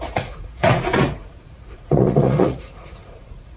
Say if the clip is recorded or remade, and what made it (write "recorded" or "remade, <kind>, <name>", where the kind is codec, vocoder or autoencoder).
remade, vocoder, Vocos